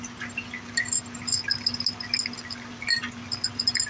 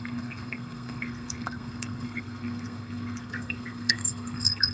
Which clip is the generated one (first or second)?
second